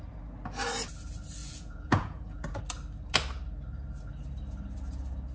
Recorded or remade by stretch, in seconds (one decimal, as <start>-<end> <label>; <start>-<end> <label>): 0.0-1.4 recorded; 1.4-2.6 remade; 2.6-5.3 recorded